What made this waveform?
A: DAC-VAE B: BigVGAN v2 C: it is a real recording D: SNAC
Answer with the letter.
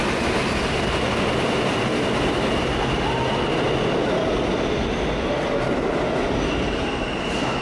C